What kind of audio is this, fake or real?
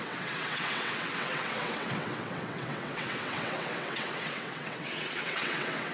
fake